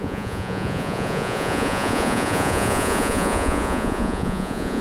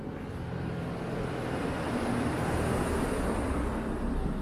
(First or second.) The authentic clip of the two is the second